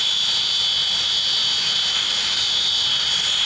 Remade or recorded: recorded